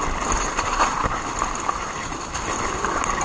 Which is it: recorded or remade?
recorded